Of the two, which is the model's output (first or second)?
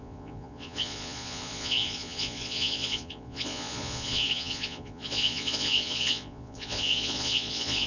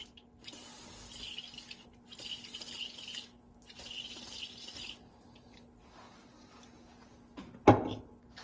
first